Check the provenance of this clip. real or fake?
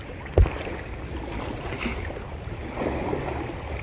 real